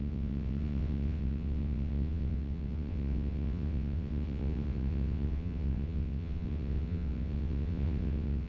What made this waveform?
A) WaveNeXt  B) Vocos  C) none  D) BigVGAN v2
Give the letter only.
A